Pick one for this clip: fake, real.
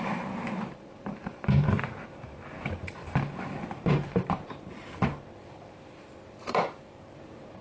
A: fake